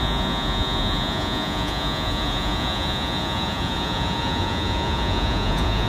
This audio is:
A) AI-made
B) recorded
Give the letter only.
A